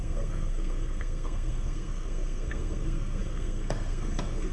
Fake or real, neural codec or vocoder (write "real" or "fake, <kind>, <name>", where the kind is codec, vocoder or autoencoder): fake, codec, SNAC